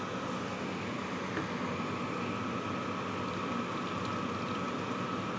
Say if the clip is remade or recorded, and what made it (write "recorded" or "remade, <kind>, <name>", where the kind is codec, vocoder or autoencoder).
recorded